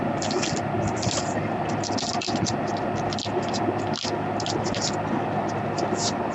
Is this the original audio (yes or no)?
yes